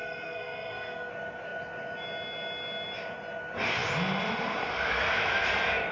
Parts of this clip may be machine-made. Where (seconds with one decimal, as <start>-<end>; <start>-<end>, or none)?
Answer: 0.0-1.1